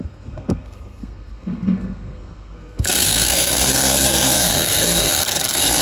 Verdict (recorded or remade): remade